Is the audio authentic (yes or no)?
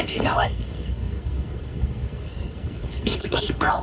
no